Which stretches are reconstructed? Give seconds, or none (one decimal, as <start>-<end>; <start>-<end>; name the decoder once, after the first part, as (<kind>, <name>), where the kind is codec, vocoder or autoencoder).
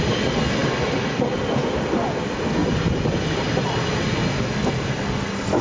none